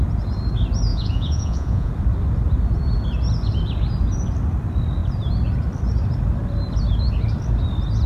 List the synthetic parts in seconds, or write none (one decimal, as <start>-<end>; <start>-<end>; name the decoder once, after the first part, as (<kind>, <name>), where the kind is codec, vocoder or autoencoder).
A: 0.9-1.9 (vocoder, Vocos)

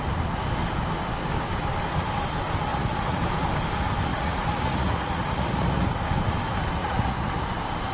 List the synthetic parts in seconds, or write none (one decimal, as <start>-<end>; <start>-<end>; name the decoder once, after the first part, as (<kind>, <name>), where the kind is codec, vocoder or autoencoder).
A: 2.7-3.2 (vocoder, Vocos); 4.1-5.8; 6.8-7.5

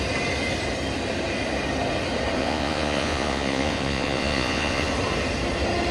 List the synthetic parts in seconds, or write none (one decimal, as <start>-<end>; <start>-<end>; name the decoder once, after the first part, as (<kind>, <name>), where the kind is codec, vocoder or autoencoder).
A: 2.4-4.9 (vocoder, Vocos)

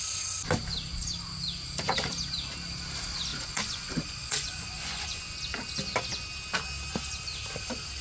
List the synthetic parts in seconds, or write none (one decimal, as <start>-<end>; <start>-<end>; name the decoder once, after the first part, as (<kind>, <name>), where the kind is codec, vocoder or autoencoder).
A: 3.3-5.4 (vocoder, Vocos)

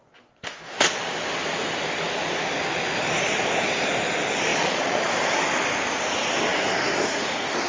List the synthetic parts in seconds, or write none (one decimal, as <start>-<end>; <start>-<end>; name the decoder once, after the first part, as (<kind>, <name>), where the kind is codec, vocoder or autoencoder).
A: 4.5-5.1 (vocoder, Vocos)

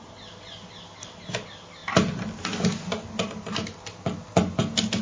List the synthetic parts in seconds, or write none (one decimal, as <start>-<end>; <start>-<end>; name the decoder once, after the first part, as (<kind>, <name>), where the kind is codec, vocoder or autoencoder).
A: none

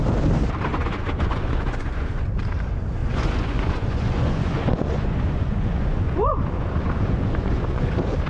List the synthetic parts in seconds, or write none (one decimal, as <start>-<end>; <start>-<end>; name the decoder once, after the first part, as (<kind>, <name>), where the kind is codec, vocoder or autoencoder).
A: 0.7-2.3 (vocoder, Vocos); 3.0-7.9

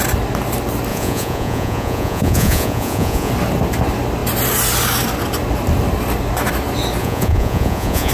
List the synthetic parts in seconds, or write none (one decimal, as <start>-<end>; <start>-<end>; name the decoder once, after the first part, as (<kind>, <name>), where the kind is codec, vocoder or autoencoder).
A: 0.9-3.3 (vocoder, Vocos); 7.0-8.1